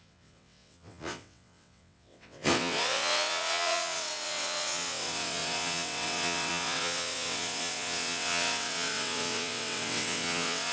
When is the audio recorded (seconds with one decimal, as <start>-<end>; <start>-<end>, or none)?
none